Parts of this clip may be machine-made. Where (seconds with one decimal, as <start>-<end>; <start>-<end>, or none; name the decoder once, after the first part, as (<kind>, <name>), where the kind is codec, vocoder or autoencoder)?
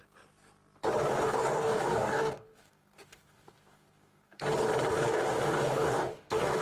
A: 1.0-4.5 (codec, DAC); 4.9-6.6